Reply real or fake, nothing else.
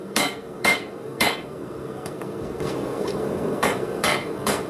fake